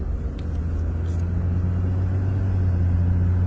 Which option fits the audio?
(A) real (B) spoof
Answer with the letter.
A